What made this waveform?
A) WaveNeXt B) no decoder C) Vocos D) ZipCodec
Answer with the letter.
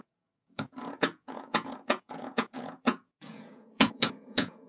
C